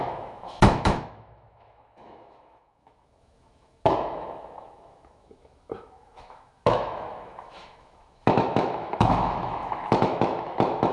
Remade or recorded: remade